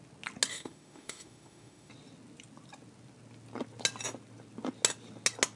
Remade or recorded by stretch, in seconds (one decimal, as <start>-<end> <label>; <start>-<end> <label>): 0.0-0.5 recorded; 0.5-1.9 remade; 1.9-5.6 recorded